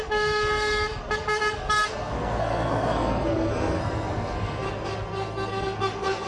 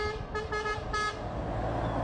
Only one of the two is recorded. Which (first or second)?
second